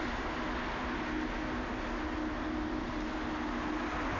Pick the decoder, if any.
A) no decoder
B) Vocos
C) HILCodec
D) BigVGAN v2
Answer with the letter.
A